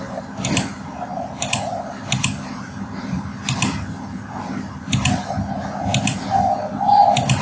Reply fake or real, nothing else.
real